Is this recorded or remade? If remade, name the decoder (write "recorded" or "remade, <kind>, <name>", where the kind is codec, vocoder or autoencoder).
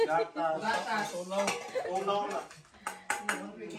recorded